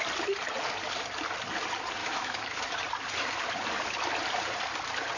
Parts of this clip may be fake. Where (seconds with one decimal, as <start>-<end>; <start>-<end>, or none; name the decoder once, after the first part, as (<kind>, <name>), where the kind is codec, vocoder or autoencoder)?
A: 2.0-2.6 (autoencoder, DAC-VAE)